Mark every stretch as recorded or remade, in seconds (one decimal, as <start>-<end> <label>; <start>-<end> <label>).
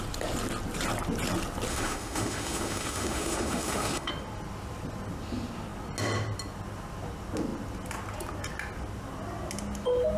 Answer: 0.0-1.7 recorded; 1.7-4.1 remade; 4.1-10.2 recorded